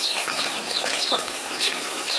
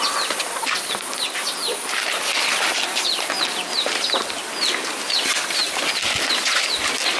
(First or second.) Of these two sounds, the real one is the second